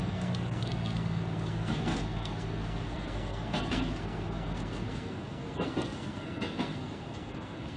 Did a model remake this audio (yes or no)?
yes